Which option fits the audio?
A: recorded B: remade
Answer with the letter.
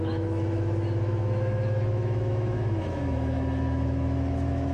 B